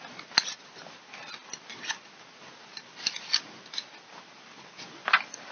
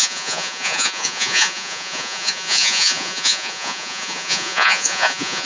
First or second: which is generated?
second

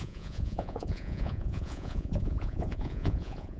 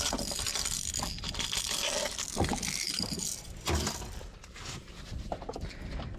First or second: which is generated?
first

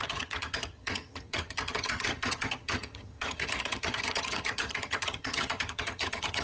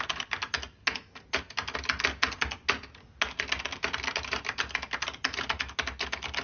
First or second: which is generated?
first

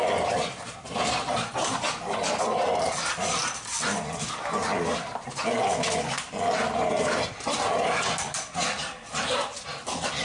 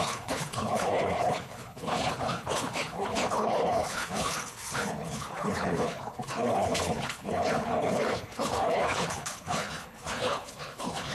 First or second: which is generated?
second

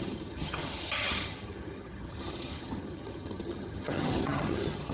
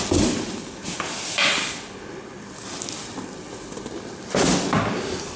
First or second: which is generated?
first